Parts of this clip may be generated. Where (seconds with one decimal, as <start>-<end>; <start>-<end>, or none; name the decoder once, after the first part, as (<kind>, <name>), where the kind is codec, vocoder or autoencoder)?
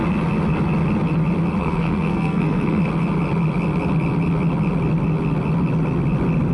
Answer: 1.6-2.8 (codec, SNAC)